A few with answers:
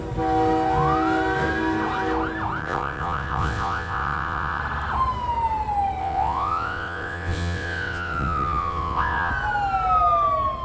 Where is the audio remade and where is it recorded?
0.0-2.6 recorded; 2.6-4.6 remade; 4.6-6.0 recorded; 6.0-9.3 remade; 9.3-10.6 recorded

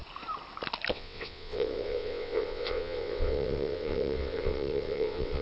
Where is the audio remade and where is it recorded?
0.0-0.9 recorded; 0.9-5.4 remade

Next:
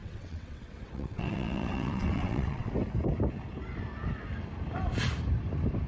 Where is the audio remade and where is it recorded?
0.0-2.7 remade; 2.7-5.9 recorded